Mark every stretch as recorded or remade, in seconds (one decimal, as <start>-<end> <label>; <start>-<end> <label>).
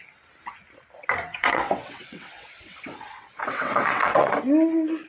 0.0-1.3 recorded; 1.3-4.4 remade; 4.4-5.1 recorded